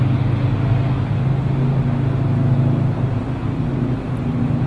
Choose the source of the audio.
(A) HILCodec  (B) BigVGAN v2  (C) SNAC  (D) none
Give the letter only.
D